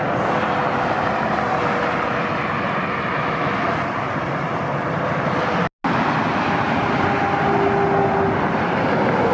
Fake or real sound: real